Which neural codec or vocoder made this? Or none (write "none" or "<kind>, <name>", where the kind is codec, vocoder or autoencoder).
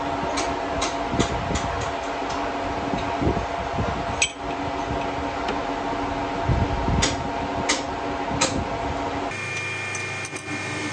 none